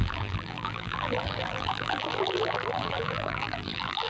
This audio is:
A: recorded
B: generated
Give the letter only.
B